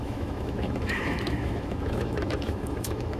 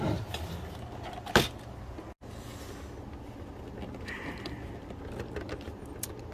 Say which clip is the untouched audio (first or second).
second